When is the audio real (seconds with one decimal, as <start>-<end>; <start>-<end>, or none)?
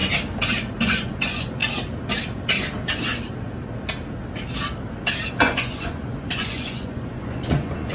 0.0-0.8; 1.6-5.3